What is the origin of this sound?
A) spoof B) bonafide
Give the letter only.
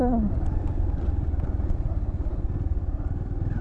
B